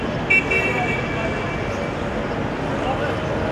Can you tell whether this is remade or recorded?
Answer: recorded